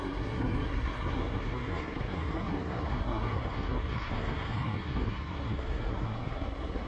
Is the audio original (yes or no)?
no